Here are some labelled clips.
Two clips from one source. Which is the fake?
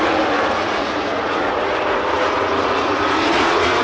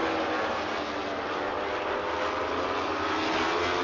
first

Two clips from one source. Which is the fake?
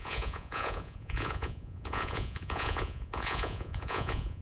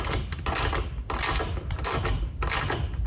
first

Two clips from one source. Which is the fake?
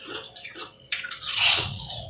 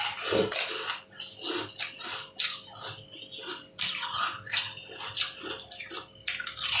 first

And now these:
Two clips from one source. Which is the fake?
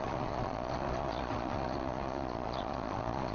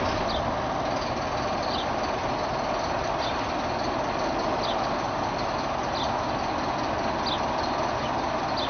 first